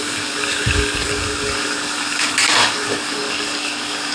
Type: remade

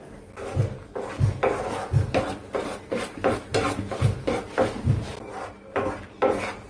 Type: recorded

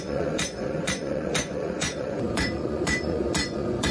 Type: remade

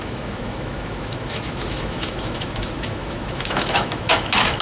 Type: remade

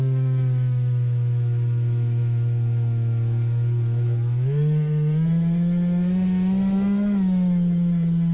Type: remade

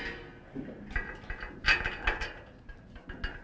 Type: recorded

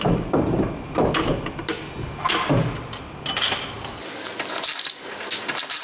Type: recorded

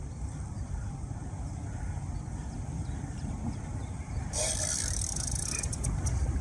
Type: remade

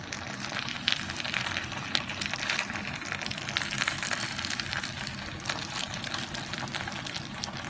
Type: remade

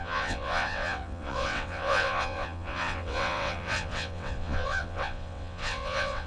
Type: remade